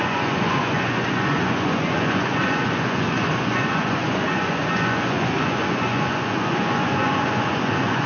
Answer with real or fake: fake